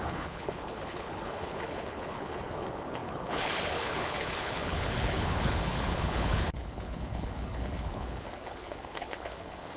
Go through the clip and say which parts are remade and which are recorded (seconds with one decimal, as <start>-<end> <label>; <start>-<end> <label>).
0.0-9.8 remade